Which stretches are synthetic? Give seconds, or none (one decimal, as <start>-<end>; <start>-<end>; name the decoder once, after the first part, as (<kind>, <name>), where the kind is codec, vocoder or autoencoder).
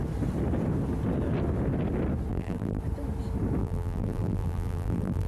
2.3-2.8 (vocoder, BigVGAN v2); 3.6-5.3